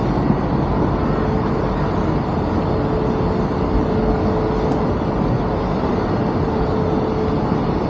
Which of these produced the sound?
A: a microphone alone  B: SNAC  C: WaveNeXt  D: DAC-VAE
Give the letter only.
A